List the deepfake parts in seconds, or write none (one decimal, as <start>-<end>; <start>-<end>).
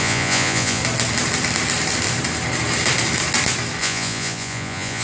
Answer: 0.0-0.8; 3.8-5.0